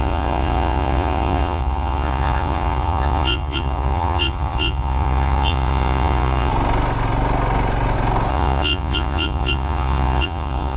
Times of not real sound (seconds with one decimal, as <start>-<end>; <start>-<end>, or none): 0.0-6.5; 8.3-10.8